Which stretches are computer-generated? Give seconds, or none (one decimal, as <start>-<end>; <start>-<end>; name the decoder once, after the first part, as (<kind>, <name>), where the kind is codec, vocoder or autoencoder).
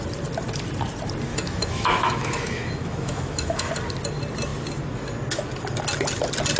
1.3-3.7 (autoencoder, DAC-VAE)